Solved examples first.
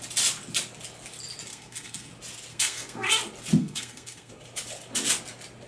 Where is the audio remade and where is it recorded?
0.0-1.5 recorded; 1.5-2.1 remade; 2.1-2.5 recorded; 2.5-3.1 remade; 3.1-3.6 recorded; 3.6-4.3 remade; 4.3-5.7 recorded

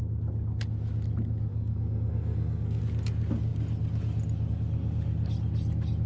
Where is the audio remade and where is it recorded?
0.0-1.5 recorded; 1.5-2.8 remade; 2.8-6.1 recorded

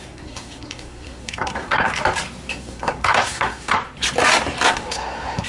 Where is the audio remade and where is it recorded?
0.0-1.9 remade; 1.9-2.5 recorded; 2.5-3.8 remade; 3.8-4.7 recorded; 4.7-5.5 remade